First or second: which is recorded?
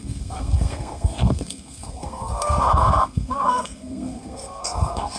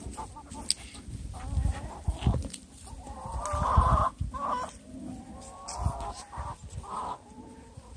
second